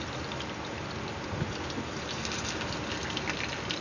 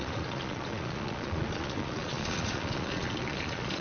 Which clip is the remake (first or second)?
second